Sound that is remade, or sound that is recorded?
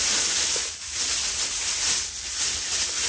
recorded